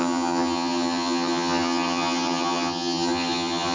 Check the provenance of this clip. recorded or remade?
remade